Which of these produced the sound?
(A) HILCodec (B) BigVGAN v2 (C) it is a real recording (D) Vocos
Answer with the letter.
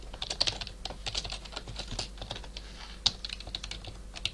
C